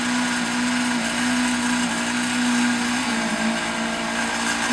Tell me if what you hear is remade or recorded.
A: recorded